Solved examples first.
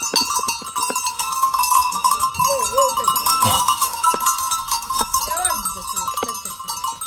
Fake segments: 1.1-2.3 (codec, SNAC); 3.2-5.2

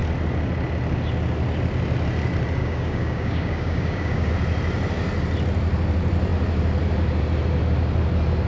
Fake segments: 2.6-4.3 (codec, DAC)

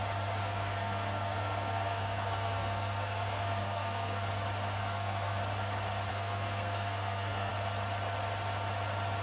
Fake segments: 0.4-4.3 (codec, SNAC); 4.8-5.4; 6.1-7.5

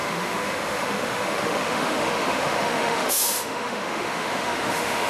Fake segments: 0.0-5.1 (autoencoder, DAC-VAE)

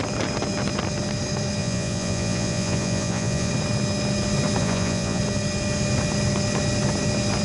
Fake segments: 1.6-3.5 (vocoder, Vocos); 4.6-5.2

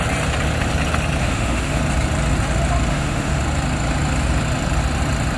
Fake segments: 1.2-1.8 (autoencoder, DAC-VAE); 2.9-3.4

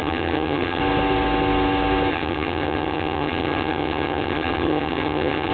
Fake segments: 0.0-0.8 (vocoder, HiFi-GAN); 2.1-5.5